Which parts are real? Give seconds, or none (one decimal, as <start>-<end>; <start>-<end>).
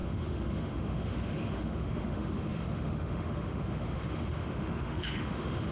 none